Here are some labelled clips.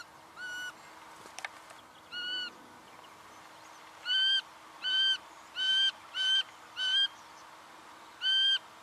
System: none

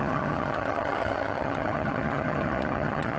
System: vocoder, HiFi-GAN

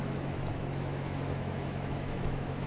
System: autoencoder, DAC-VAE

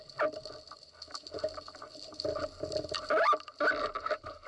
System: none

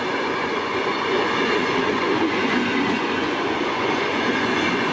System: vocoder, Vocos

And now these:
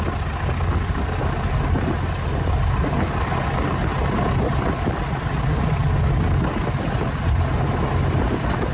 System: none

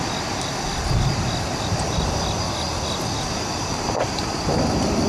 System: none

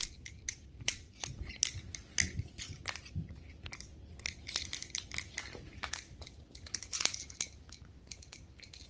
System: none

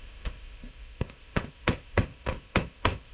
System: codec, ZipCodec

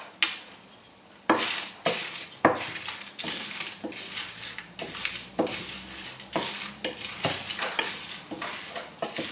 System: none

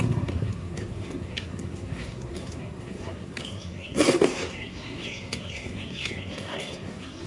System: codec, SNAC